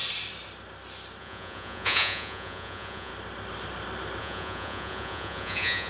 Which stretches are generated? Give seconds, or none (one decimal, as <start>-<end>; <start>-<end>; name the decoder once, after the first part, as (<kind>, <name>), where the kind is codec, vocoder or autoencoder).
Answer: 1.2-3.1 (vocoder, Vocos); 4.2-5.9